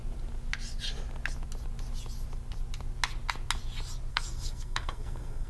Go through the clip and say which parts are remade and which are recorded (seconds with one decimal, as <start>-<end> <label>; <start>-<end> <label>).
0.0-4.1 recorded; 4.1-5.5 remade